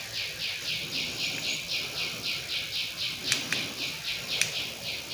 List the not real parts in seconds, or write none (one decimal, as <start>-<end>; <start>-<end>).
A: none